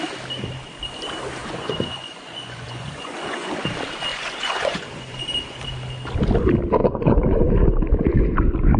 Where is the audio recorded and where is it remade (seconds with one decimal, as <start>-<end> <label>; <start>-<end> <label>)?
0.0-1.4 recorded; 1.4-3.5 remade; 3.5-4.1 recorded; 4.1-5.2 remade; 5.2-6.8 recorded; 6.8-7.5 remade; 7.5-8.8 recorded

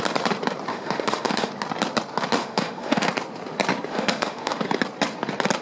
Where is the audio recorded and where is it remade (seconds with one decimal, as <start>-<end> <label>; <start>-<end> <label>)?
0.0-0.7 recorded; 0.7-1.5 remade; 1.5-2.4 recorded; 2.4-3.1 remade; 3.1-3.9 recorded; 3.9-4.6 remade; 4.6-5.6 recorded

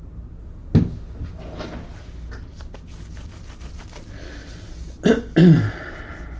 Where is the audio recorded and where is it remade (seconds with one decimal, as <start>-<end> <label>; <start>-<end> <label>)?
0.0-6.4 recorded

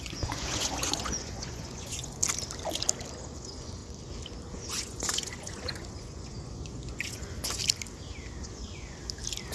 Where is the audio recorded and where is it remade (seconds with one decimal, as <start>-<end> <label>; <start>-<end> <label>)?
0.0-2.2 remade; 2.2-3.3 recorded; 3.3-3.8 remade; 3.8-4.5 recorded; 4.5-7.6 remade; 7.6-8.4 recorded; 8.4-9.0 remade; 9.0-9.5 recorded

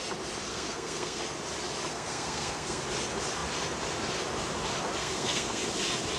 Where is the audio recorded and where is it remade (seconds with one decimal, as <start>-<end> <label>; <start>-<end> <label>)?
0.0-0.5 recorded; 0.5-1.2 remade; 1.2-1.9 recorded; 1.9-2.8 remade; 2.8-5.0 recorded; 5.0-5.6 remade; 5.6-6.2 recorded

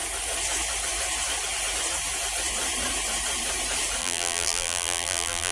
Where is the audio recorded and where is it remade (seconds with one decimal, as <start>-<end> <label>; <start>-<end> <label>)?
0.0-4.0 recorded; 4.0-5.5 remade